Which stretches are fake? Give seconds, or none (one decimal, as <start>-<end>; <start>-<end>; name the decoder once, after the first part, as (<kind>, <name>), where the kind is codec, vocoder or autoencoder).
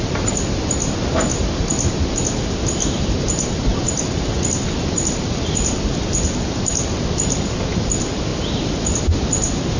none